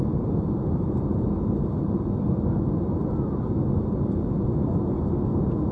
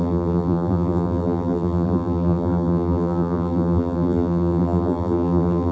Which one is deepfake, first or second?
second